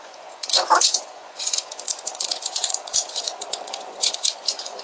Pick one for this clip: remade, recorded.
remade